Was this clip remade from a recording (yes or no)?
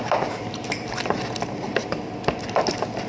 no